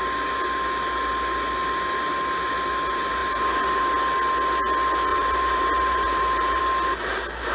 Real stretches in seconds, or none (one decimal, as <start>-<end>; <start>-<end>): 0.0-3.2; 3.8-5.1; 6.6-7.5

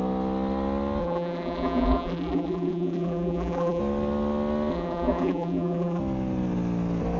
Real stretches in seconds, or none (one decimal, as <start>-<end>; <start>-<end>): 0.0-1.0; 3.8-4.7; 6.0-7.2

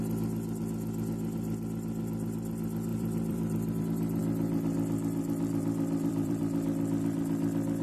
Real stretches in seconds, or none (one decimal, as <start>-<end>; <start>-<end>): 0.0-2.9; 3.8-4.2; 6.4-7.8

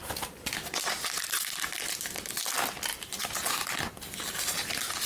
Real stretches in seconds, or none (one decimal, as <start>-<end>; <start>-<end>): 2.4-2.9; 3.9-5.1

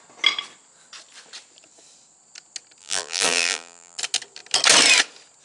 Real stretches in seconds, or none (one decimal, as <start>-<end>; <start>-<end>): 0.0-2.8; 4.0-5.4

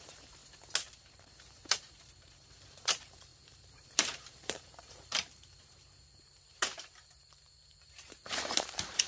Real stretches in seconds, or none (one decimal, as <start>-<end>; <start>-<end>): 0.4-1.4

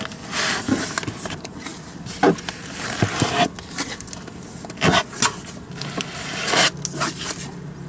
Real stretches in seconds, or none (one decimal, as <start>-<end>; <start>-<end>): 0.0-7.9